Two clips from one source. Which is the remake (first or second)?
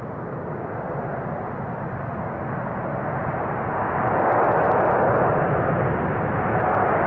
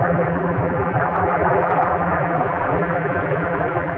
second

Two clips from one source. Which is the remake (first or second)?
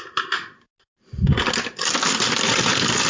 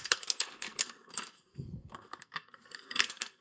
second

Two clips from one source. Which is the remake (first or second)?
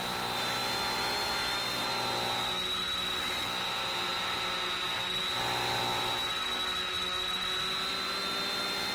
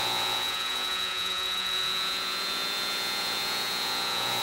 second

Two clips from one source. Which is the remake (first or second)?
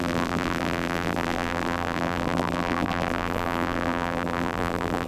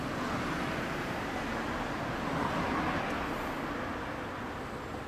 first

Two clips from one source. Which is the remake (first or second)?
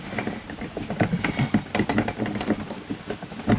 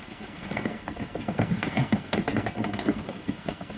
second